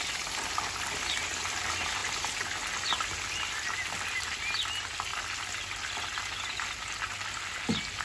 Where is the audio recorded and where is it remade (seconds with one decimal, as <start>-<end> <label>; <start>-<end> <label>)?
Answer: 0.0-8.0 recorded